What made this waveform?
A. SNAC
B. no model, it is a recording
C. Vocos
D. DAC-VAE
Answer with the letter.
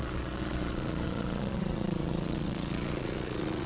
C